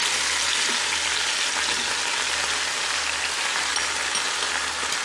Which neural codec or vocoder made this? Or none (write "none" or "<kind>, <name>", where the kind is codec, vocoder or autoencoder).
none